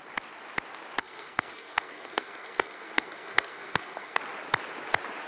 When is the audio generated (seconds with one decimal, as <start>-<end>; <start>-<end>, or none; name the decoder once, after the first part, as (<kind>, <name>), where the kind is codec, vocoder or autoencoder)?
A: 1.0-4.2 (codec, SNAC)